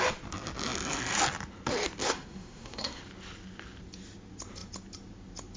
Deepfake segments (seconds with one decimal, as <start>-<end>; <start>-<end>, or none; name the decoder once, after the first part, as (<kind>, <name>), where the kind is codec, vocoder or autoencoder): 2.0-3.0 (codec, SNAC)